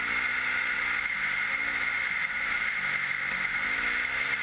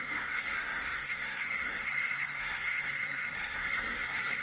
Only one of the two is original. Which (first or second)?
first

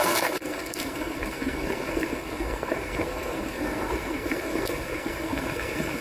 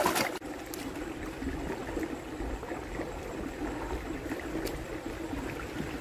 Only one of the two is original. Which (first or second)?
second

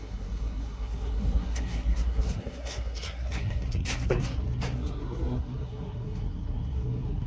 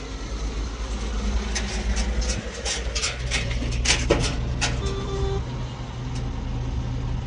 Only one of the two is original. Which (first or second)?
second